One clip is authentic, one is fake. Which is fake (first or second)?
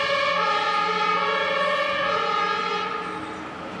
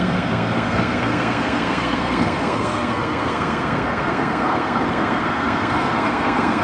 second